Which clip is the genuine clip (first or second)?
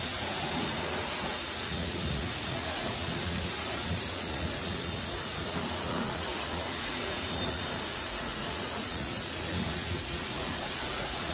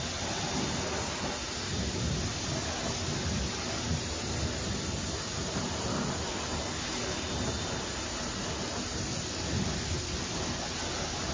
second